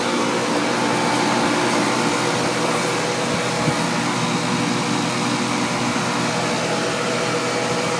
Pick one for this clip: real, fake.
real